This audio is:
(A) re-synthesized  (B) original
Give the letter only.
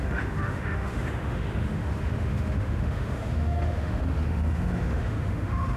A